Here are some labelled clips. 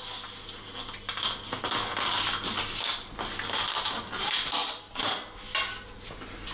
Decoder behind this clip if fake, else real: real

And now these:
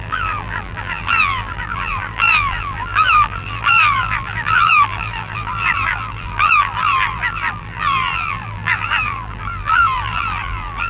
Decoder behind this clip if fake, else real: fake, vocoder, BigVGAN v2